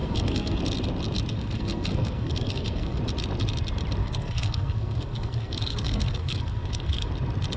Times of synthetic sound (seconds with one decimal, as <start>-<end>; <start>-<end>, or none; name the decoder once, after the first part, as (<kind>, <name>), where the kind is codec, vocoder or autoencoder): 0.0-0.6 (codec, SNAC); 1.3-3.0; 4.0-7.1